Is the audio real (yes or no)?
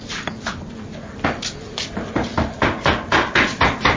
yes